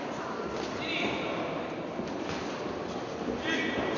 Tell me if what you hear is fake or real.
real